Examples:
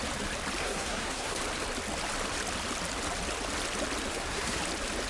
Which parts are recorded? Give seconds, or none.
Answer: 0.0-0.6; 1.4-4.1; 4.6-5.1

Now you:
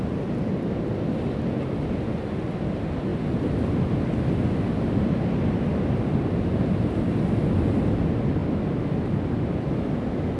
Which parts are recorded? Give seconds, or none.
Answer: 0.0-10.4

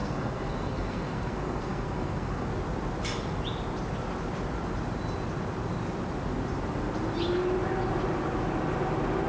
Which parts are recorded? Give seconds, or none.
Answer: 2.5-9.3